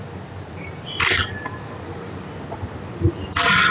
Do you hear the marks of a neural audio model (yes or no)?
no